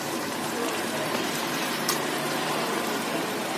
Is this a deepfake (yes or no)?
yes